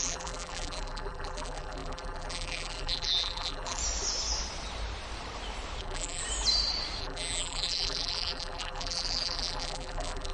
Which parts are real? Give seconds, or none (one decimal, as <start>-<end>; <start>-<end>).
3.8-5.8; 6.2-7.0